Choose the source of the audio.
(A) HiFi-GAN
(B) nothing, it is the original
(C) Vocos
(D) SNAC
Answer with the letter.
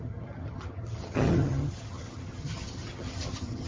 A